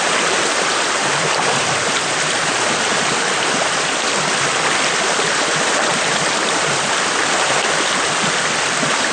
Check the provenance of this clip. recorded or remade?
recorded